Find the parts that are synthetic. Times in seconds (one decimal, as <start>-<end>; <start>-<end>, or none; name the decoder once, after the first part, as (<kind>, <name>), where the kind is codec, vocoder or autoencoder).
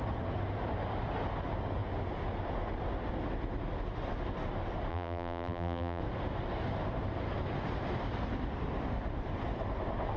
4.9-6.0 (vocoder, BigVGAN v2)